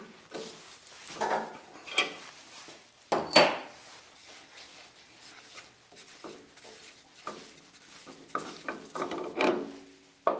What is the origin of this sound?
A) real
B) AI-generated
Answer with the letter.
A